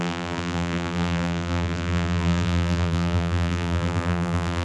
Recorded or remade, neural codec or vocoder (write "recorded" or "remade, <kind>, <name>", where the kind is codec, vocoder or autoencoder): remade, vocoder, BigVGAN v2